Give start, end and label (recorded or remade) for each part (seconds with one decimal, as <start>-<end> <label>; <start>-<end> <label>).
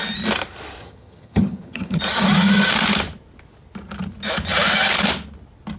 0.0-0.8 recorded; 0.8-2.0 remade; 2.0-5.8 recorded